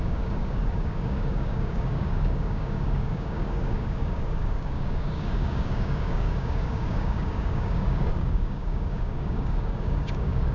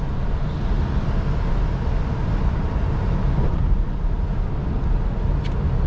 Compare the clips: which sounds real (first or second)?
second